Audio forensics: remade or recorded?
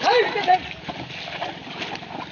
recorded